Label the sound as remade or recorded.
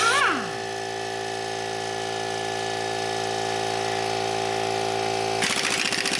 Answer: recorded